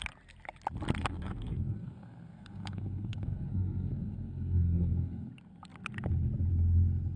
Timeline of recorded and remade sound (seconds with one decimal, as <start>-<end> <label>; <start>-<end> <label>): 0.0-1.0 recorded; 1.0-5.3 remade; 5.3-7.2 recorded